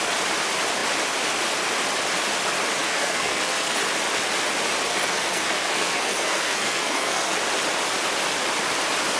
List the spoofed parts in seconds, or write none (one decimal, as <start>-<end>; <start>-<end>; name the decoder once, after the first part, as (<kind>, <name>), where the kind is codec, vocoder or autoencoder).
2.8-3.8 (codec, SNAC); 4.9-7.4